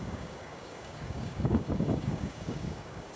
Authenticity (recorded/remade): remade